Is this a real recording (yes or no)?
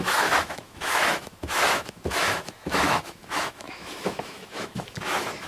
no